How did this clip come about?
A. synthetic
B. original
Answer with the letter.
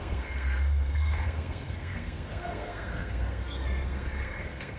A